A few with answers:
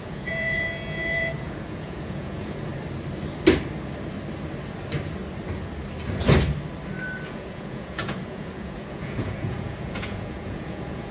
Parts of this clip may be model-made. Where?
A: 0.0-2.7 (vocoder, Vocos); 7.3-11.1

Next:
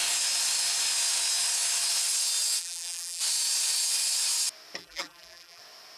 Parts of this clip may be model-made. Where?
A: 2.6-3.2 (vocoder, BigVGAN v2); 4.8-5.6

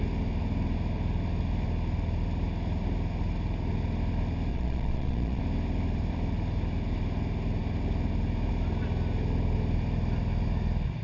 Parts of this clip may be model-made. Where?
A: 4.5-5.4 (vocoder, Vocos)

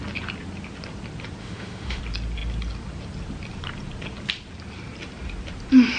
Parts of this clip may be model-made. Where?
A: 1.4-2.0 (autoencoder, DAC-VAE)

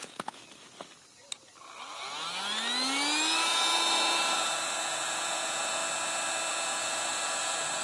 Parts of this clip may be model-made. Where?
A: 0.0-0.4 (vocoder, Vocos); 3.4-5.8; 6.5-7.8

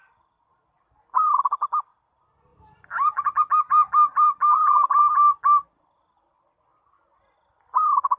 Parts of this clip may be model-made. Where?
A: 0.5-1.2 (vocoder, BigVGAN v2); 2.5-5.1

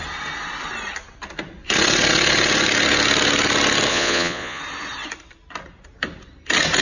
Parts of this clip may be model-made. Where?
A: 3.9-4.6 (vocoder, Vocos)

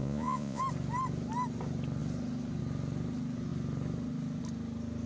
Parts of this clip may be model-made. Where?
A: 0.0-0.6 (vocoder, Vocos)